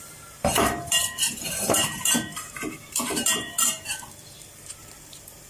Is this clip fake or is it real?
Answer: fake